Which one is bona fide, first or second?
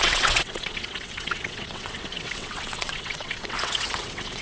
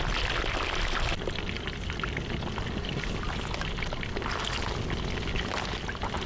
second